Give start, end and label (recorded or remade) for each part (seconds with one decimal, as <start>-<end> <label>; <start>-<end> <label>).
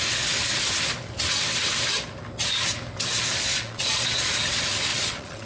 0.0-3.5 recorded; 3.5-4.3 remade; 4.3-4.9 recorded; 4.9-5.5 remade